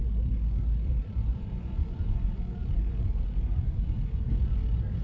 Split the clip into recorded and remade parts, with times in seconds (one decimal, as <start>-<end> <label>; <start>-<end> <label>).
0.0-1.3 recorded; 1.3-4.3 remade; 4.3-5.0 recorded